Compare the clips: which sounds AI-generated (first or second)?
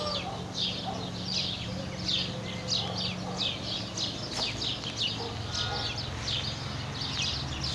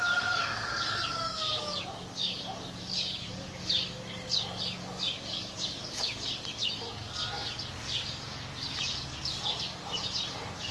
second